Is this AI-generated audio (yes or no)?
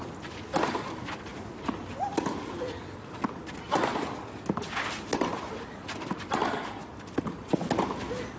no